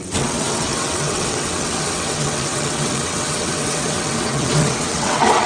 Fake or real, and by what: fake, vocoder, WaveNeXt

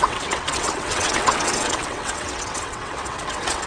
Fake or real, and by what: fake, vocoder, WaveNeXt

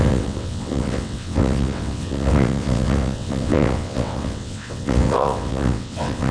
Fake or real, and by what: fake, vocoder, WaveNeXt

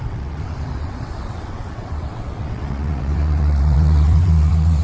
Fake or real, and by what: fake, vocoder, WaveNeXt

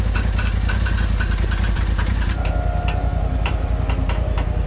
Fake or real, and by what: real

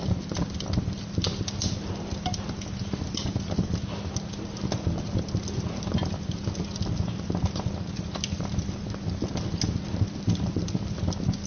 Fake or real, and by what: real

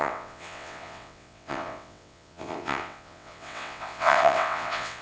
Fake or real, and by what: fake, vocoder, WaveNeXt